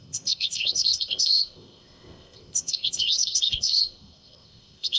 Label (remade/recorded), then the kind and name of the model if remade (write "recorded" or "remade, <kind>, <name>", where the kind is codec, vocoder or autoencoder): remade, codec, ZipCodec